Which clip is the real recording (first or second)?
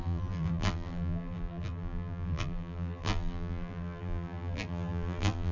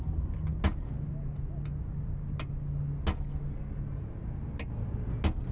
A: second